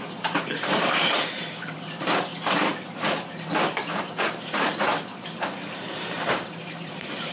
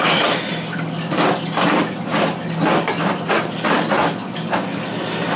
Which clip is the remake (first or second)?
first